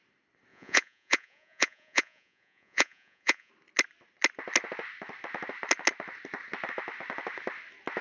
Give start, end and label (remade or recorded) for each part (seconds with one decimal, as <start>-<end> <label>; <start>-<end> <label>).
0.0-0.5 recorded; 0.5-3.5 remade; 3.5-8.0 recorded